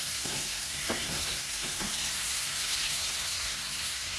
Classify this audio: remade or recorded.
remade